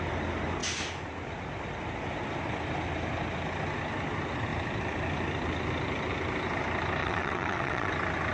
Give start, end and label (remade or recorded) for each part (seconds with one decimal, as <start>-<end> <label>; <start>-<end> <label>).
0.0-7.0 recorded; 7.0-7.9 remade; 7.9-8.3 recorded